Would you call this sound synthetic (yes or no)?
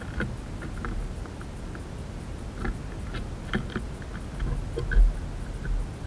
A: no